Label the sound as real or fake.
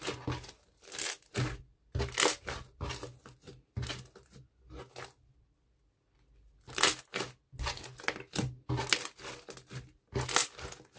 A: real